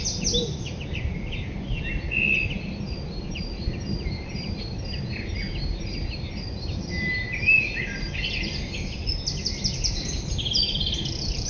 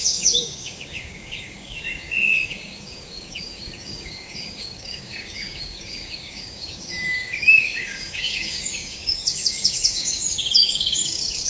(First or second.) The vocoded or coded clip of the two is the second